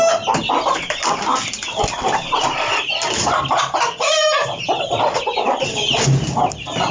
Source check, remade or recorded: recorded